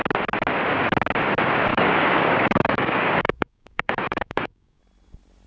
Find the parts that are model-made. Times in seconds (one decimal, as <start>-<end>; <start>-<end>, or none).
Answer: 1.7-4.8